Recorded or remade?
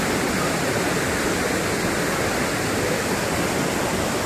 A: recorded